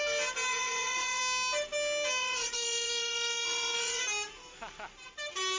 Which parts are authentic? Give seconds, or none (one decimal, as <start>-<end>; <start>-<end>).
0.0-0.5; 1.2-2.2; 4.0-5.6